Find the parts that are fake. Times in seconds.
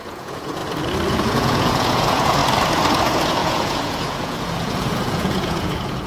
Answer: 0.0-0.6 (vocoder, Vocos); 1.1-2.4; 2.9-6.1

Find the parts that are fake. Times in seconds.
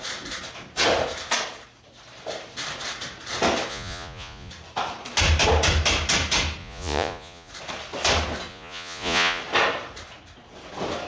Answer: 3.7-4.5 (vocoder, Vocos); 6.6-7.5; 8.5-9.4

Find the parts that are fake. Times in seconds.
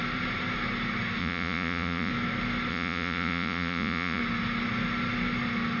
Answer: 1.2-2.1 (vocoder, Vocos); 2.7-4.2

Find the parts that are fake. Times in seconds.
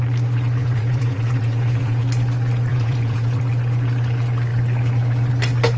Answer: 0.6-2.0 (vocoder, Vocos); 2.7-3.4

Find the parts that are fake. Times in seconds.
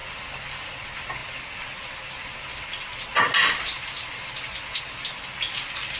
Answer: none